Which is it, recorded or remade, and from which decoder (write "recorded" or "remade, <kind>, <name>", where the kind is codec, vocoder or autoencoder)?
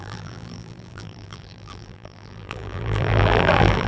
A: remade, vocoder, BigVGAN v2